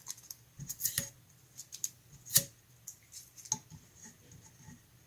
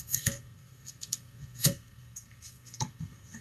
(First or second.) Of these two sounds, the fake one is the second